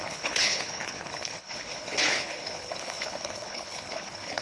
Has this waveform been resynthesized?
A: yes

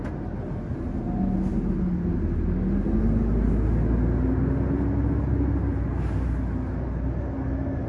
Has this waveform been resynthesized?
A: no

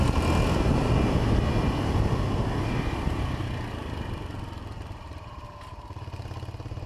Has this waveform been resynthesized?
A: no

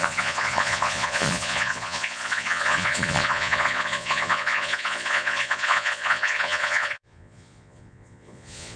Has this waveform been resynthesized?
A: yes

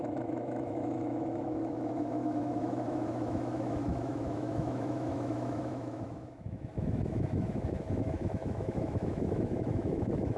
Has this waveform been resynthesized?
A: yes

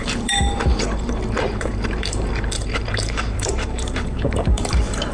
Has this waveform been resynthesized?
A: yes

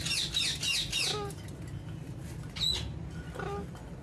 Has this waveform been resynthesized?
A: no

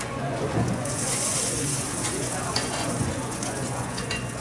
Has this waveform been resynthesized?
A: yes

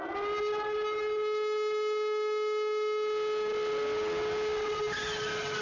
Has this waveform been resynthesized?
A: no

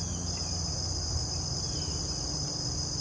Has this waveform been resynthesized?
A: no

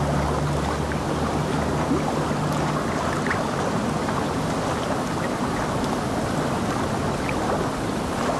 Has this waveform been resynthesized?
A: no